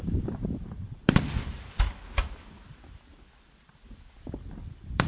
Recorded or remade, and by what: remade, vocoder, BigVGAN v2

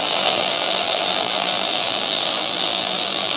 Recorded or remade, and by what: remade, vocoder, BigVGAN v2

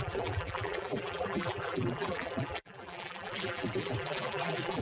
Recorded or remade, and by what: remade, vocoder, BigVGAN v2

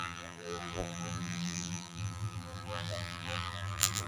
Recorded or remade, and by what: remade, vocoder, BigVGAN v2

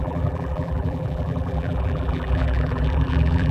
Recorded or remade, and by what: remade, vocoder, BigVGAN v2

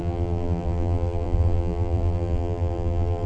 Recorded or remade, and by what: remade, vocoder, BigVGAN v2